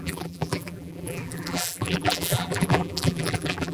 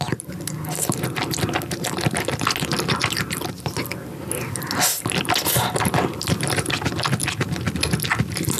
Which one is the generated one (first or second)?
first